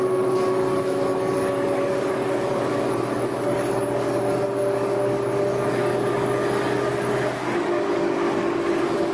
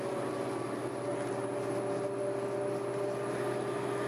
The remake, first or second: first